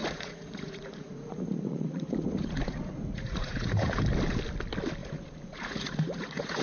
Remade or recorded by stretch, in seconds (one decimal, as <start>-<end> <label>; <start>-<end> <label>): 0.0-4.0 remade; 4.0-5.0 recorded; 5.0-6.6 remade